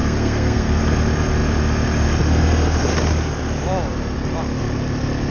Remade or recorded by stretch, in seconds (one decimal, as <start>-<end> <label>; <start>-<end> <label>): 0.0-0.8 remade; 0.8-5.3 recorded